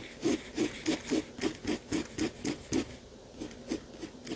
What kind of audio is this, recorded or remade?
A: recorded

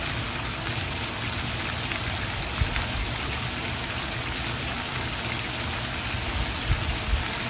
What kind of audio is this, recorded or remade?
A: recorded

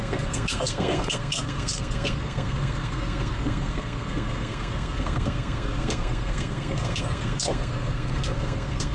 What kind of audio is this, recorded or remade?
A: remade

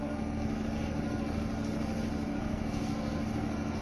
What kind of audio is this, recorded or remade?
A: remade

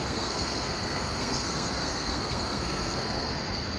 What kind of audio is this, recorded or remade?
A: remade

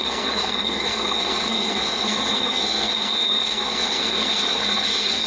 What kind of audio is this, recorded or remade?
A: remade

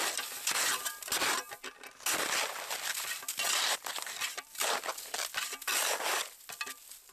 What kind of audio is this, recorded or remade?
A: recorded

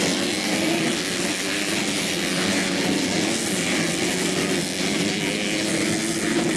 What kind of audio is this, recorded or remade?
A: recorded